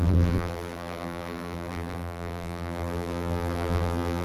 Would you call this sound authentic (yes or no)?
no